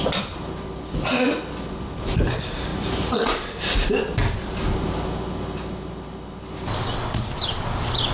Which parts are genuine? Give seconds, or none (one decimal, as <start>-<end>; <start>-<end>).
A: 0.0-8.1